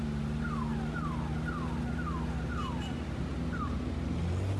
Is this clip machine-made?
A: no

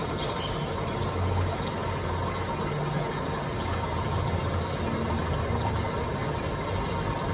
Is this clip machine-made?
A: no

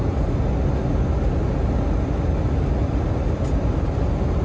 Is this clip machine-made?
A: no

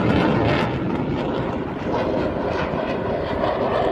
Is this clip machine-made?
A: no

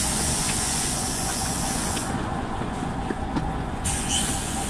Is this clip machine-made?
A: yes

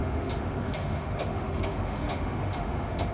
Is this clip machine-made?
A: yes